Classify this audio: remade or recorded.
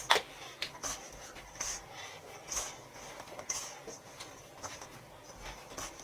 recorded